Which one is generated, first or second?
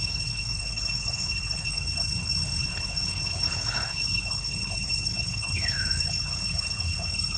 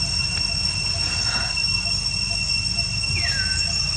first